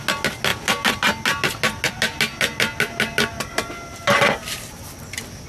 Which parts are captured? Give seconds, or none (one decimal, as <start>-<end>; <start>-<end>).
0.0-5.5

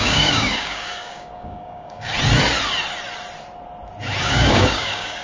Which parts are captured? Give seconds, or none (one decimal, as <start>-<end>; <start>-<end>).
2.1-4.2

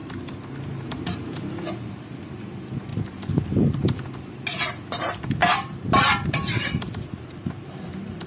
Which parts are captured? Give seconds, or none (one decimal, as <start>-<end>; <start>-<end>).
1.4-2.9; 3.7-5.4

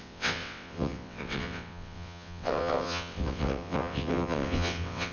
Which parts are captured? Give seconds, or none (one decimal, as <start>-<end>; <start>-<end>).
none

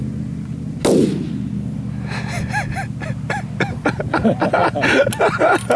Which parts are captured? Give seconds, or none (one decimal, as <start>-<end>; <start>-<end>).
0.0-5.8

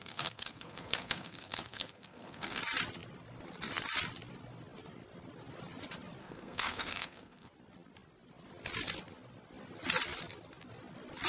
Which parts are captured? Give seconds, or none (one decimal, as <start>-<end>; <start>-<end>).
2.6-6.2; 7.5-11.3

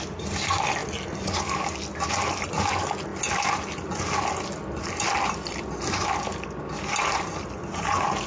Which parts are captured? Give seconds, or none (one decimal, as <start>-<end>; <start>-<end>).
0.0-8.3